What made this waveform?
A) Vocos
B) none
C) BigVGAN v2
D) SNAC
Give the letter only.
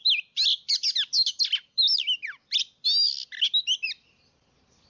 B